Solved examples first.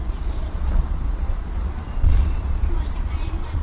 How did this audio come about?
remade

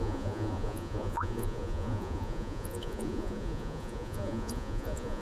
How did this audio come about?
remade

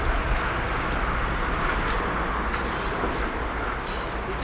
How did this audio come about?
recorded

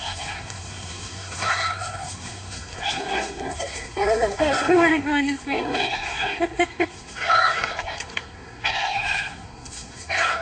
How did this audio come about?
remade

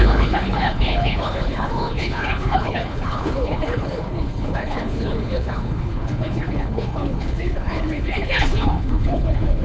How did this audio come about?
remade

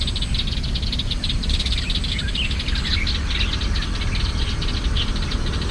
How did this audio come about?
recorded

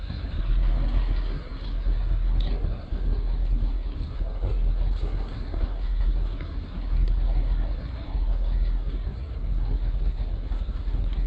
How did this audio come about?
remade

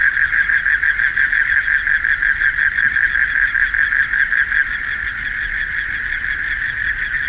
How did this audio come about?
recorded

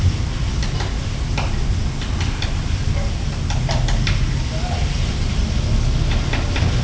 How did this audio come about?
recorded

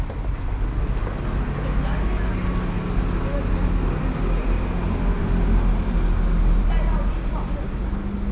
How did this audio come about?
recorded